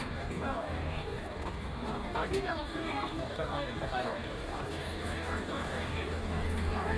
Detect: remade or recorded remade